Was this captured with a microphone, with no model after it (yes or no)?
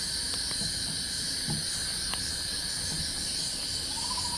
yes